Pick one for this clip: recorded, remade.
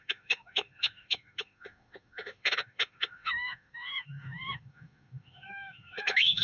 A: remade